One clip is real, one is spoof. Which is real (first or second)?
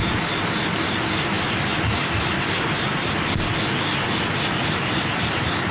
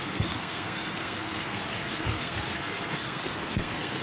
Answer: first